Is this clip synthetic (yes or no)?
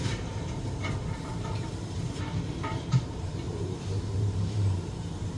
yes